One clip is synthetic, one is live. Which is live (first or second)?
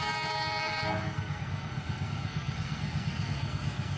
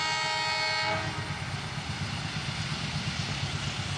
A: second